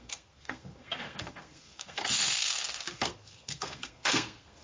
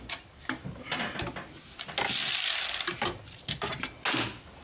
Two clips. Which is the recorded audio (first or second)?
second